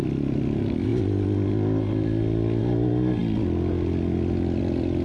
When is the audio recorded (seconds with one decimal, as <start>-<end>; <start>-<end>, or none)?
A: 0.0-5.0